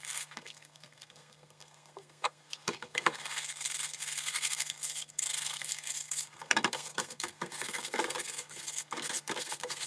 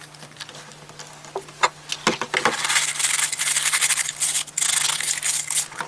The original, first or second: second